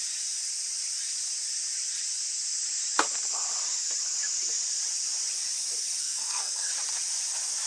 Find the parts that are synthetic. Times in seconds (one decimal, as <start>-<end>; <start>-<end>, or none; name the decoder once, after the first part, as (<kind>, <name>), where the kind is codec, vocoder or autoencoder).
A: 6.0-6.7 (codec, SNAC)